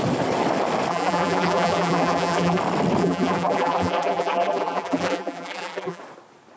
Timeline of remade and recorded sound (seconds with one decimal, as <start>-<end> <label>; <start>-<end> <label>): 0.0-0.9 recorded; 0.9-2.6 remade; 2.6-3.0 recorded; 3.0-6.0 remade; 6.0-6.6 recorded